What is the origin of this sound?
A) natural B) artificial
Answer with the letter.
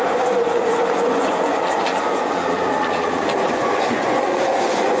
B